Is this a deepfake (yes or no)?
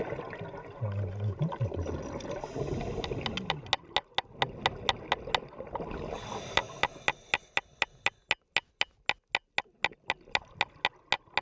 no